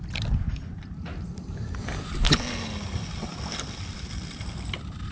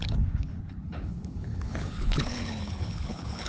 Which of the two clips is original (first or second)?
first